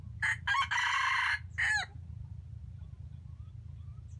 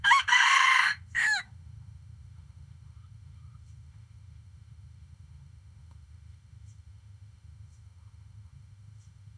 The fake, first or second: second